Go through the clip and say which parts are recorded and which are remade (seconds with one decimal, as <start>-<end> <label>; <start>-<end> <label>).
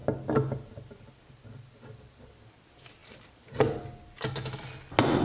0.0-3.0 recorded; 3.0-3.7 remade; 3.7-5.2 recorded